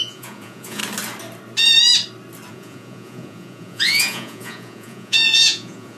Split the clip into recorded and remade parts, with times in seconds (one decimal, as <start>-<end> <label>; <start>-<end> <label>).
0.0-0.8 remade; 0.8-2.5 recorded; 2.5-6.0 remade